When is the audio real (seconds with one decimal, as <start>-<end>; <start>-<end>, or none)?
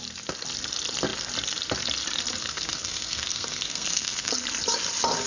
0.0-2.4; 4.3-5.3